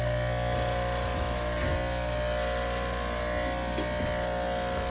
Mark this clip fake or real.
real